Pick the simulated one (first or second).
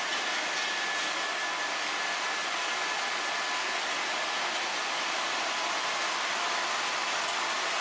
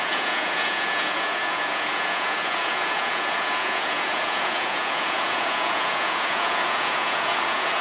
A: second